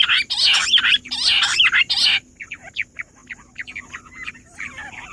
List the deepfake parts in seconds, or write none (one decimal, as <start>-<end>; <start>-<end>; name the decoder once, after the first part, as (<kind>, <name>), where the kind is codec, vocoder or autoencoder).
none